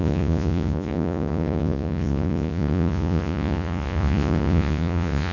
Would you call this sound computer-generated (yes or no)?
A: yes